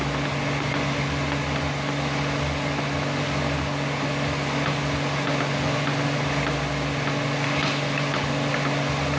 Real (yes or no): yes